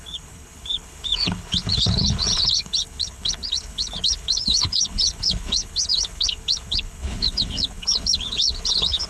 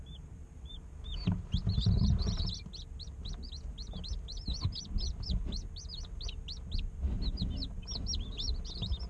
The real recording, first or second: second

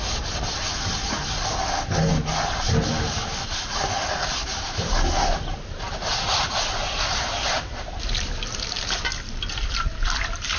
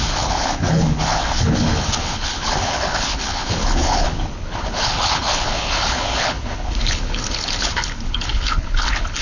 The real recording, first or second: first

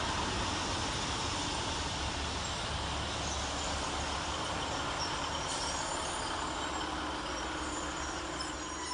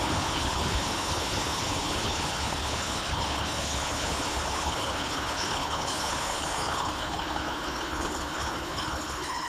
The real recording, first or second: first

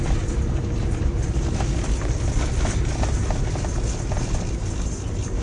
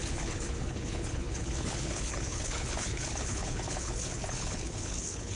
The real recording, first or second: first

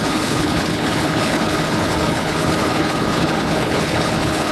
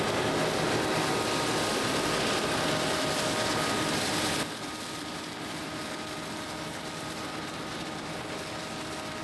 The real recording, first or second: second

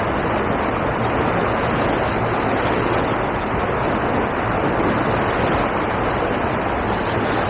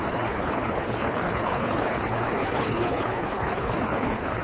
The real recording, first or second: first